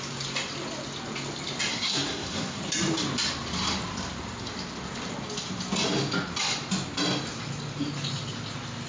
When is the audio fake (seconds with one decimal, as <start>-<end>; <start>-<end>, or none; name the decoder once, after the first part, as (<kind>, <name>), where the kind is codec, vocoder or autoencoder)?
1.7-2.6 (codec, SNAC)